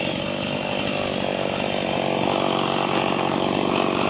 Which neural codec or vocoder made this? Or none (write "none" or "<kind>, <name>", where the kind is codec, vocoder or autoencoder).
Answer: none